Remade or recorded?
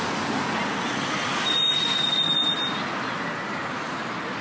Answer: recorded